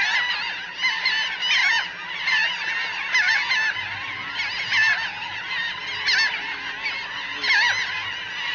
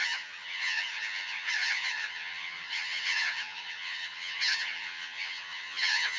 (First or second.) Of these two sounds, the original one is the first